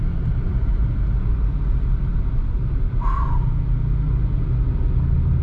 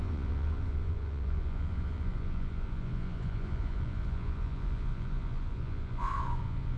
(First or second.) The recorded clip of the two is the first